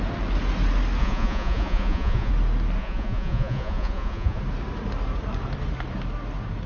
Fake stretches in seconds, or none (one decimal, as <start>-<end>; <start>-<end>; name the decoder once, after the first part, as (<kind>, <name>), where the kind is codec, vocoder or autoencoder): 1.0-2.3 (vocoder, Vocos); 2.8-4.4